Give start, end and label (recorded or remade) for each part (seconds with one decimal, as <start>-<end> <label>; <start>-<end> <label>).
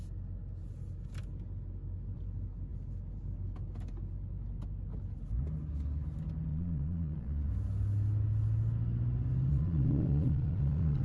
0.0-6.5 recorded; 6.5-7.5 remade; 7.5-9.5 recorded; 9.5-11.0 remade